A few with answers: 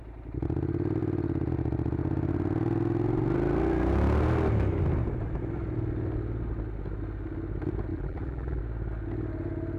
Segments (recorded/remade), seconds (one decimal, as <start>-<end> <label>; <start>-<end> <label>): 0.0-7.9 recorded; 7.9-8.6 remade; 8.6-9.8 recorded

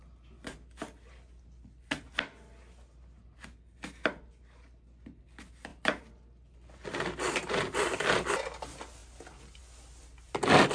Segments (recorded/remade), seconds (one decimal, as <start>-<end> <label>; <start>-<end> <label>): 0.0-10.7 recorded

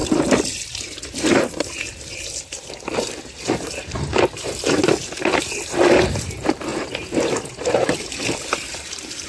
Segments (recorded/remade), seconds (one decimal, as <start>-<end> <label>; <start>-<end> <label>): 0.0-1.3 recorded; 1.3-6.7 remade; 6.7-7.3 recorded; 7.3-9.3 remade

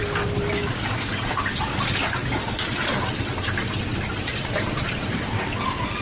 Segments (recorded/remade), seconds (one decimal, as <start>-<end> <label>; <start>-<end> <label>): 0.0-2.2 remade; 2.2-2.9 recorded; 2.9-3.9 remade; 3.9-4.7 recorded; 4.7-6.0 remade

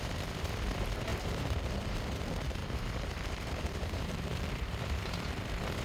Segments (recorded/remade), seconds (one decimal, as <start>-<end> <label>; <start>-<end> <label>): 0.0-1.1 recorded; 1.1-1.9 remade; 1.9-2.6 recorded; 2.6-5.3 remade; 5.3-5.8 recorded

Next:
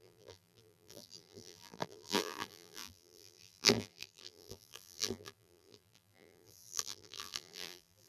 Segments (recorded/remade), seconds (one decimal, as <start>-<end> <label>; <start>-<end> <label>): 0.0-8.1 remade

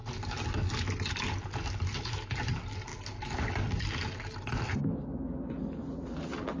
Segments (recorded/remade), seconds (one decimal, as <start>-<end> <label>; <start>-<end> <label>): 0.0-6.6 recorded

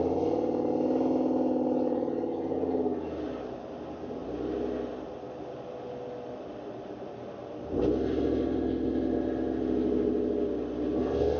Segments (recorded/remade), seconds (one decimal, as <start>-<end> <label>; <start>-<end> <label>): 0.0-11.4 recorded